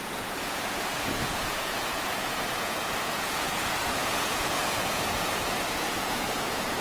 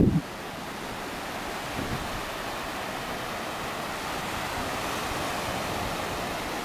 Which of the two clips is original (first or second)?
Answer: second